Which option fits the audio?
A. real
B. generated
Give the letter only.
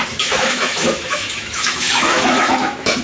B